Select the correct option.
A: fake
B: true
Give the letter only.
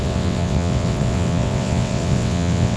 A